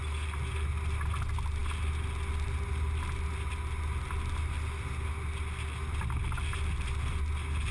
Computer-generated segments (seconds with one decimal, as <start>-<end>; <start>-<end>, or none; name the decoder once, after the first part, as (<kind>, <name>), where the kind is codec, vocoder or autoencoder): none